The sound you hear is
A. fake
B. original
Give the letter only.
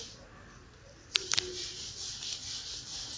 B